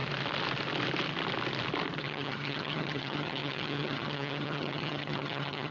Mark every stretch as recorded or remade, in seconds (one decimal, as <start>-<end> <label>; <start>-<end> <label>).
0.0-2.0 recorded; 2.0-5.7 remade